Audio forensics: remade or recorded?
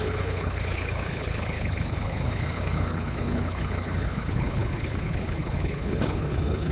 remade